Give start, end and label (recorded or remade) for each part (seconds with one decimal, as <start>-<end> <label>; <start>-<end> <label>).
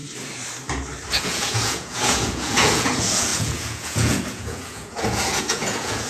0.0-1.1 recorded; 1.1-6.1 remade